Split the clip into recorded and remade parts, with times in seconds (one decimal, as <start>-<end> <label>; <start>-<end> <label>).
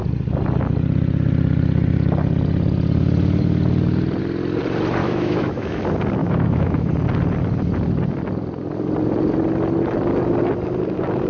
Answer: 0.0-5.0 recorded; 5.0-5.8 remade; 5.8-6.2 recorded; 6.2-6.9 remade; 6.9-11.3 recorded